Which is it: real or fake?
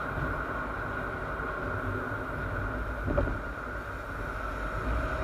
real